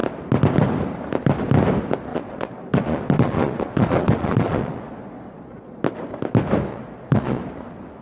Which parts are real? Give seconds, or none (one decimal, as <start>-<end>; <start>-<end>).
0.0-2.1; 5.8-6.7; 7.4-8.0